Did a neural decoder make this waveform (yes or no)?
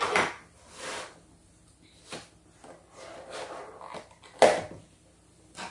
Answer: no